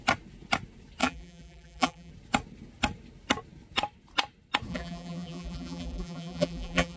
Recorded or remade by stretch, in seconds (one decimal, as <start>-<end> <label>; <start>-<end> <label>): 0.0-1.0 recorded; 1.0-2.1 remade; 2.1-4.7 recorded; 4.7-7.0 remade